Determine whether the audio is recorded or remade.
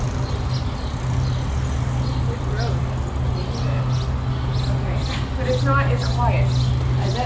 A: recorded